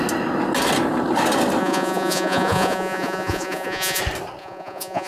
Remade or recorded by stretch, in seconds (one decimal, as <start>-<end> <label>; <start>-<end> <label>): 0.0-1.6 recorded; 1.6-4.0 remade; 4.0-4.4 recorded; 4.4-5.1 remade